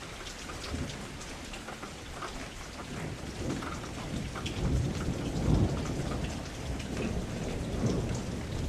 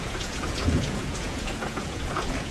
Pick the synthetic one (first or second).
second